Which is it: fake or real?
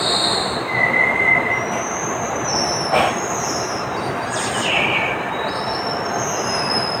real